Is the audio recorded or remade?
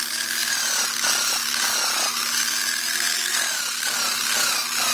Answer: recorded